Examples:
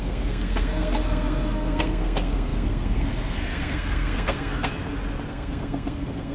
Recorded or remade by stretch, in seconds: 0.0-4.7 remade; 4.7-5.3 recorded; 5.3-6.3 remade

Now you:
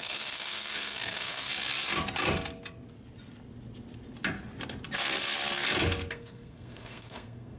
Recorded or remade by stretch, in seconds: 0.0-1.5 remade; 1.5-6.1 recorded; 6.1-7.6 remade

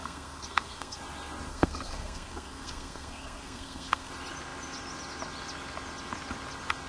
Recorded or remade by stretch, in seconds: 0.0-1.0 remade; 1.0-1.5 recorded; 1.5-4.1 remade; 4.1-6.9 recorded

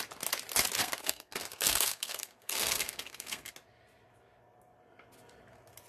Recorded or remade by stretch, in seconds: 0.0-0.8 recorded; 0.8-3.5 remade; 3.5-5.9 recorded